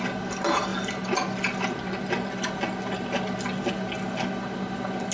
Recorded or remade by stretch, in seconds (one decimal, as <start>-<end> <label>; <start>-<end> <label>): 0.0-5.1 recorded

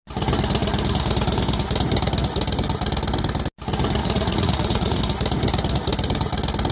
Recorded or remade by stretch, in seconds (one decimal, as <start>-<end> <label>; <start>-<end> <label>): 0.0-4.0 recorded; 4.0-5.0 remade; 5.0-6.7 recorded

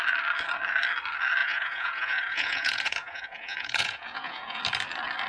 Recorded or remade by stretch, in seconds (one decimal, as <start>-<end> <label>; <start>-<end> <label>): 0.0-1.4 recorded; 1.4-4.6 remade; 4.6-5.3 recorded